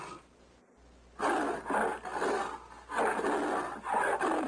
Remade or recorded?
recorded